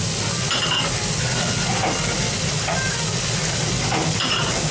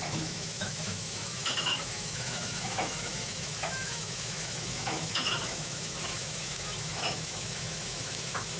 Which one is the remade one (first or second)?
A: second